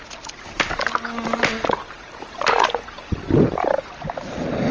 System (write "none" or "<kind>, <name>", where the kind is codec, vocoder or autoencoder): none